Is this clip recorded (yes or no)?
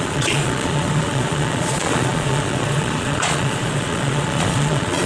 no